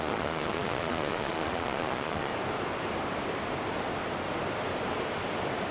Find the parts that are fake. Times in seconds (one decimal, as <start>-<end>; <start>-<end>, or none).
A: 0.0-2.3